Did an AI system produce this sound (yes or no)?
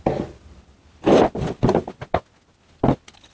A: no